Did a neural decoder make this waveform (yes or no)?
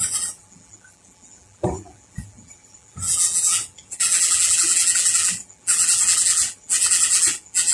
yes